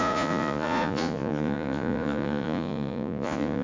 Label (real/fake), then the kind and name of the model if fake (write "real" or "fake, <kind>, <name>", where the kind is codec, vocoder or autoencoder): fake, vocoder, Vocos